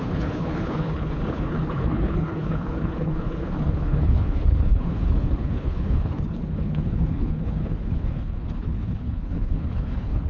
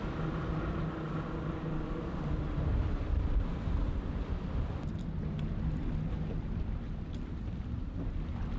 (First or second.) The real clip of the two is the second